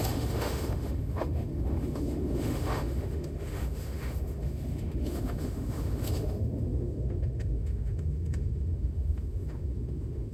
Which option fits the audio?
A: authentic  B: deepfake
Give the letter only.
B